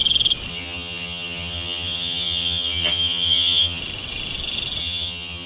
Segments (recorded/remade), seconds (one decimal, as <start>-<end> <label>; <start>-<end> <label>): 0.0-0.5 recorded; 0.5-3.8 remade; 3.8-4.8 recorded; 4.8-5.5 remade